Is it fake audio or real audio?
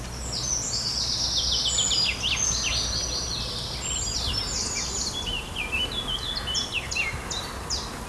real